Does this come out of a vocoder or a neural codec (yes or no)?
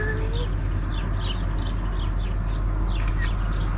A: no